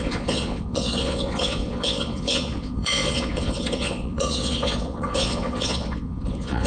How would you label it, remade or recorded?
remade